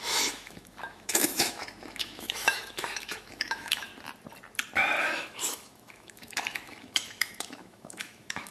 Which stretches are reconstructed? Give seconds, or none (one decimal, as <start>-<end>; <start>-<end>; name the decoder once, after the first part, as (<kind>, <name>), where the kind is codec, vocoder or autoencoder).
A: 0.0-3.9 (autoencoder, DAC-VAE); 5.0-8.5